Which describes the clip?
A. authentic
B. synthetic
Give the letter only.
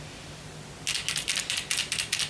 A